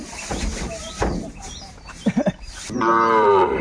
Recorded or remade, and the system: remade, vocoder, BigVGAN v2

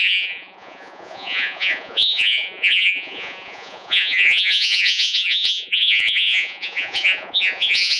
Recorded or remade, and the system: remade, vocoder, Vocos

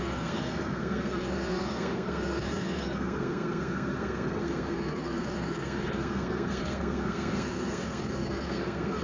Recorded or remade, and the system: remade, codec, SNAC